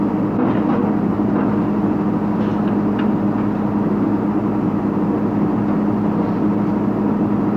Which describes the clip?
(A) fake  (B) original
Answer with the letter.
B